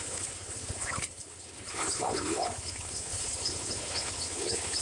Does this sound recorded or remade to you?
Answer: remade